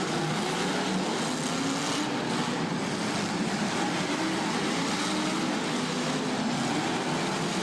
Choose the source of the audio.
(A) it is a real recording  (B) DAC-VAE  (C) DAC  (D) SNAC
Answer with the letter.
A